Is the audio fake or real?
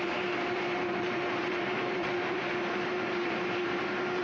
fake